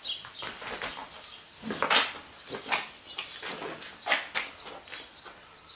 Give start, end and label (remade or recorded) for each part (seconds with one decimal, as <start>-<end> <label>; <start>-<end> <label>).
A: 0.0-5.8 recorded